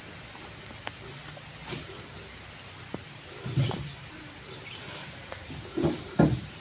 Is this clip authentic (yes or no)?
yes